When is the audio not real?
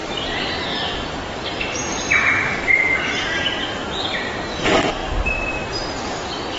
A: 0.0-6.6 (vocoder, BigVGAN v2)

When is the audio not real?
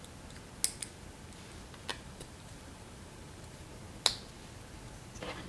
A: 1.9-3.7 (vocoder, BigVGAN v2)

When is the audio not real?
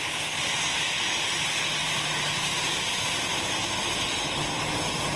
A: 1.8-2.6 (vocoder, BigVGAN v2)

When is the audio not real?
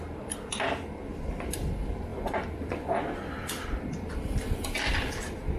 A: 1.1-1.7 (vocoder, BigVGAN v2); 2.1-5.6